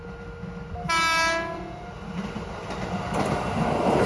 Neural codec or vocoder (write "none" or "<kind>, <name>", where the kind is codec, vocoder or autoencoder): none